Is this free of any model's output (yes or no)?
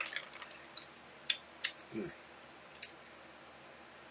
yes